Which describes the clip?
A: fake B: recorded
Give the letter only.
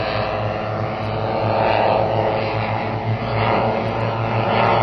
B